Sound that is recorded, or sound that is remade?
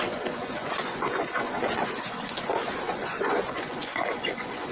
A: remade